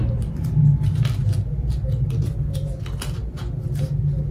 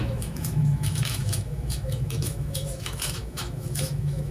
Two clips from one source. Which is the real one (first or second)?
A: first